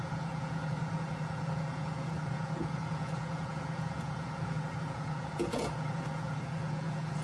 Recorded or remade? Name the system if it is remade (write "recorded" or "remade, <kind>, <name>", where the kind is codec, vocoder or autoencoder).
remade, vocoder, Vocos